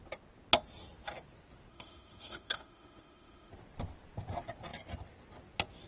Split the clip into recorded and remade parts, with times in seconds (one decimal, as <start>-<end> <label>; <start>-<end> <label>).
0.0-1.7 recorded; 1.7-3.5 remade; 3.5-5.9 recorded

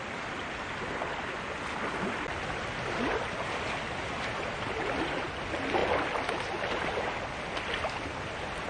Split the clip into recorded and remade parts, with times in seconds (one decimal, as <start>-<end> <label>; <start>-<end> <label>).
0.0-8.7 recorded

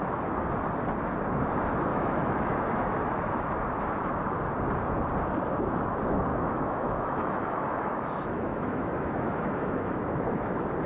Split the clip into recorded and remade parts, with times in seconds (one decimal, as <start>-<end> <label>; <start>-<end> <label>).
0.0-1.9 recorded; 1.9-3.5 remade; 3.5-6.3 recorded; 6.3-10.5 remade; 10.5-10.9 recorded

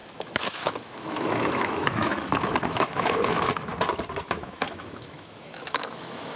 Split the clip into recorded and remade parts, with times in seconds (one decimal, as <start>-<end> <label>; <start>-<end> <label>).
0.0-3.7 remade; 3.7-4.3 recorded; 4.3-6.4 remade

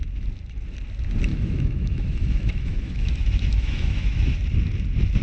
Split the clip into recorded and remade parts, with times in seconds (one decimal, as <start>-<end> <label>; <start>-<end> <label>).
0.0-1.3 recorded; 1.3-4.4 remade; 4.4-5.2 recorded

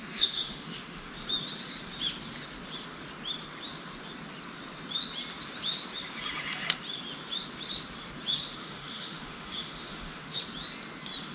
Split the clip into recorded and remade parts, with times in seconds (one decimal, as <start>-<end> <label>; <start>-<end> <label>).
0.0-1.1 remade; 1.1-8.6 recorded; 8.6-10.4 remade; 10.4-11.3 recorded